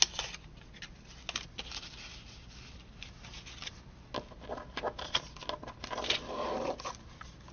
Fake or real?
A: real